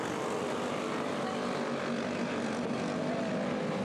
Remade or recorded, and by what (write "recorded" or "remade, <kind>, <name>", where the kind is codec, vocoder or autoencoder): recorded